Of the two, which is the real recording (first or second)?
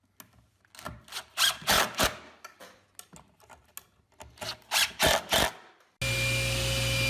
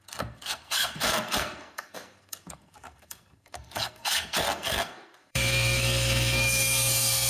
first